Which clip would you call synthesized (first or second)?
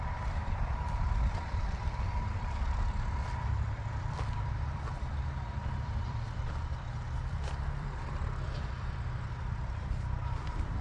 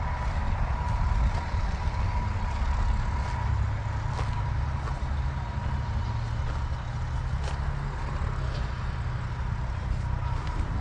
first